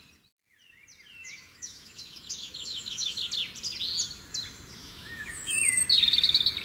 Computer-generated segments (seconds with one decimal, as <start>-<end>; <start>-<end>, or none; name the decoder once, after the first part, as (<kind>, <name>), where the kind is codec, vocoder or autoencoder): 1.2-3.2 (autoencoder, DAC-VAE); 4.8-5.8